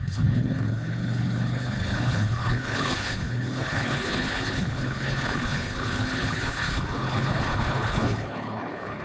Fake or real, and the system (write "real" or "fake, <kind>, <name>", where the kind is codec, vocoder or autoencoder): fake, codec, HILCodec